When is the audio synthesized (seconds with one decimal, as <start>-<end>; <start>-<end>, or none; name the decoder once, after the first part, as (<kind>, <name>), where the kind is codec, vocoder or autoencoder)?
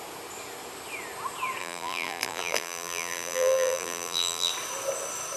1.6-4.5 (vocoder, BigVGAN v2)